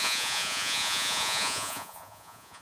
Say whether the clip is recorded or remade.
remade